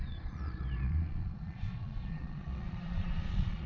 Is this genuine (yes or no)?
no